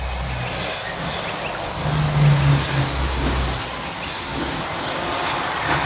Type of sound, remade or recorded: recorded